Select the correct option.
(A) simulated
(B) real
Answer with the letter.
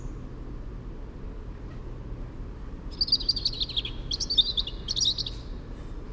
B